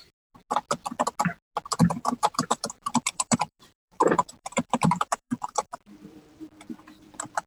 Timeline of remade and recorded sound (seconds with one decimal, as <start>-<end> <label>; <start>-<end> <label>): 0.0-0.4 remade; 0.4-2.0 recorded; 2.0-7.5 remade